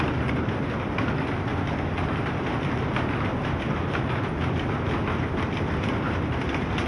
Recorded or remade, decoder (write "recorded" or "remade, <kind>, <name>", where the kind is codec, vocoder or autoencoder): recorded